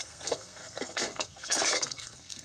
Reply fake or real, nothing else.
fake